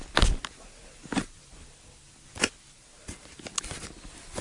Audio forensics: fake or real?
real